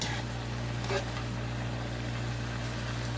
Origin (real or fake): real